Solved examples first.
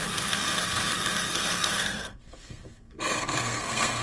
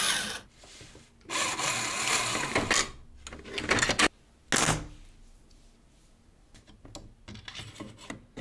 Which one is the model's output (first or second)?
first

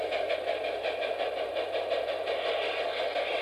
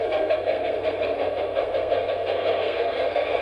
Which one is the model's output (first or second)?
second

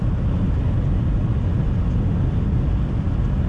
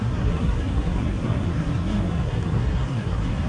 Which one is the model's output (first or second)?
second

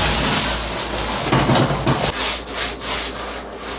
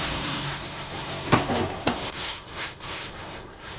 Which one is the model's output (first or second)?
second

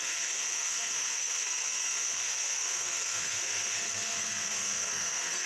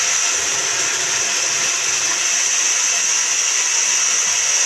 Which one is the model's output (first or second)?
first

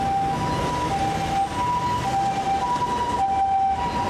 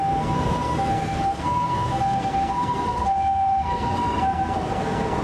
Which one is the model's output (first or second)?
second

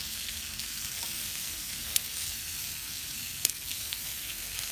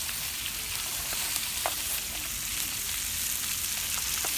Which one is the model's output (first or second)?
first